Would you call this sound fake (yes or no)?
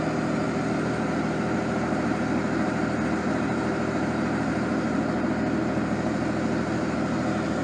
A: no